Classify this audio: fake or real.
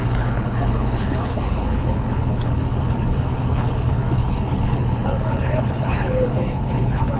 fake